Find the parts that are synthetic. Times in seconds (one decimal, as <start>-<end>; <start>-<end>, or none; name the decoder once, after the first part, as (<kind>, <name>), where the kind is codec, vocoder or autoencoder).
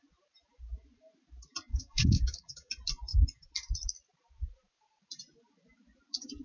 1.7-2.7 (codec, DAC)